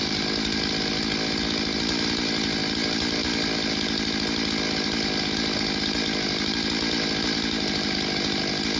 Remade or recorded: recorded